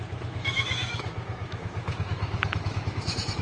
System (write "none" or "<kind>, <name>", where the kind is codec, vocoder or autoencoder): autoencoder, DAC-VAE